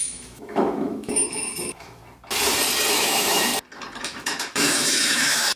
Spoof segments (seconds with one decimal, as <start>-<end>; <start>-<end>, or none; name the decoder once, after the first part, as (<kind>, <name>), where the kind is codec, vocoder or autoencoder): 0.0-2.0 (autoencoder, DAC-VAE); 2.9-3.5; 4.0-5.6